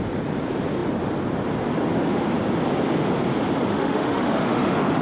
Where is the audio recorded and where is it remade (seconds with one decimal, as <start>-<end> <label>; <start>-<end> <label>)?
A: 0.0-3.7 recorded; 3.7-5.0 remade